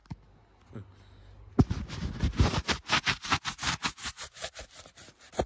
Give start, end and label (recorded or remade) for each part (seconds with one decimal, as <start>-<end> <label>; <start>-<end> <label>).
0.0-2.4 recorded; 2.4-5.5 remade